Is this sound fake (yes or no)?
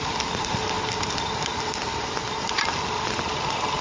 no